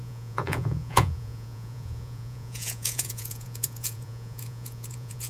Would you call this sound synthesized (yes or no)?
yes